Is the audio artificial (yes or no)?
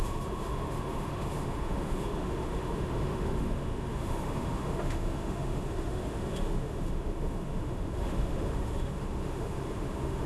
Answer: yes